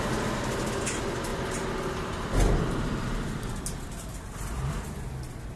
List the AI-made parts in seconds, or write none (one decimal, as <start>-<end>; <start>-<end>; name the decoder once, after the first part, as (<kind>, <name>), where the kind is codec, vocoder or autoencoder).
none